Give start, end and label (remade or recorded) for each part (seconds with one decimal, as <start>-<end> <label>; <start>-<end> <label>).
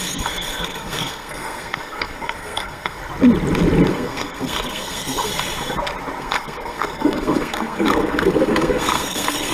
0.0-3.0 remade; 3.0-3.9 recorded; 3.9-5.3 remade; 5.3-6.2 recorded; 6.2-9.5 remade